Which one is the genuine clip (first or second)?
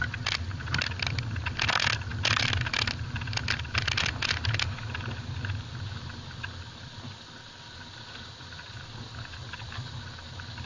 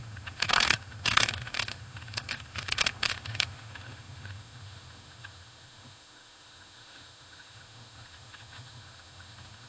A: first